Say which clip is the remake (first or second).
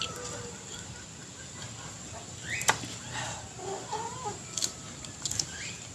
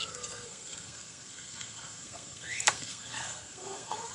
second